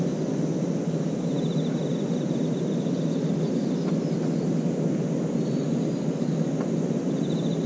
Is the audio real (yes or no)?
yes